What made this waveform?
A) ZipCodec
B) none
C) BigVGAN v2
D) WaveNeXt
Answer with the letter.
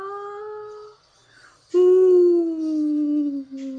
B